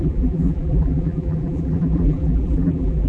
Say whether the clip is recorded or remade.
remade